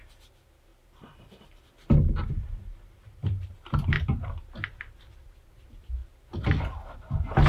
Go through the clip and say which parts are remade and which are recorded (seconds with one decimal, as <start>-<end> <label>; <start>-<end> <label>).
0.0-3.2 recorded; 3.2-3.9 remade; 3.9-7.5 recorded